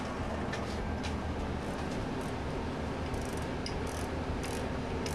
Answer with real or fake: real